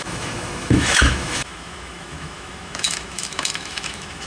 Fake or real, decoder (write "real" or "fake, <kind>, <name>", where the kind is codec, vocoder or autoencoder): fake, autoencoder, DAC-VAE